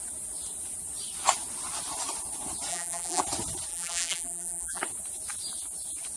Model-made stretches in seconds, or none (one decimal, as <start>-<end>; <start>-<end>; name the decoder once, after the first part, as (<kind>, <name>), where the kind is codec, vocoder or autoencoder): 2.7-3.2 (vocoder, BigVGAN v2); 3.7-4.8